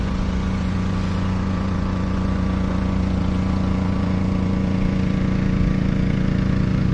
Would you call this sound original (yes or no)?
no